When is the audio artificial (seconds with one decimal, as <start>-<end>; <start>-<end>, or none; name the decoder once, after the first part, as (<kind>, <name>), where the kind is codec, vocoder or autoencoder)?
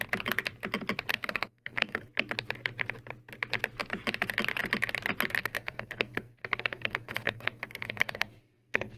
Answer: 1.1-2.1 (codec, SNAC); 5.4-9.0